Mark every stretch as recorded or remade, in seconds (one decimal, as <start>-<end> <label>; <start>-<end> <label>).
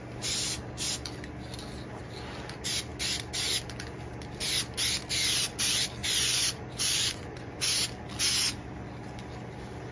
0.0-6.0 recorded; 6.0-7.7 remade; 7.7-9.9 recorded